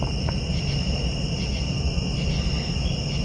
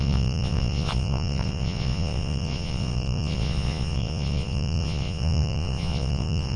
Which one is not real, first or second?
second